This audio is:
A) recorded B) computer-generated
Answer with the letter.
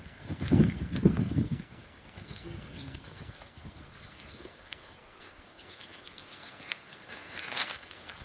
B